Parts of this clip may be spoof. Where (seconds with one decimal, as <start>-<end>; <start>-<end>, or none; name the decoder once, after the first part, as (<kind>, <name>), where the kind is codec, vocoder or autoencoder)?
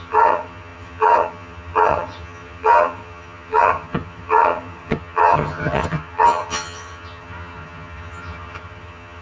0.0-9.2 (vocoder, HiFi-GAN)